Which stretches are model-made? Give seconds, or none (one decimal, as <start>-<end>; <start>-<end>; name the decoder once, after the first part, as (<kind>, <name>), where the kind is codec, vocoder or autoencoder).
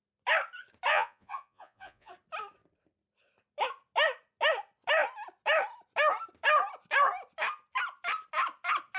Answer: 0.9-2.1 (vocoder, Vocos)